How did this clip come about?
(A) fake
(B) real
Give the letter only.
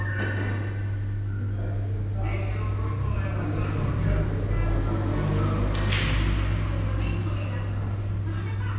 B